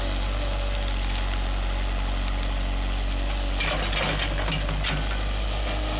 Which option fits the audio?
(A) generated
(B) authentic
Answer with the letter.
B